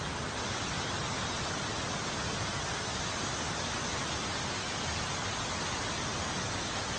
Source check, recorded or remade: recorded